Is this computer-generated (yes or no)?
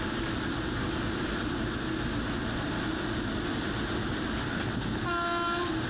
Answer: no